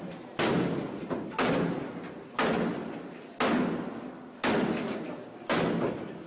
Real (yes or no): yes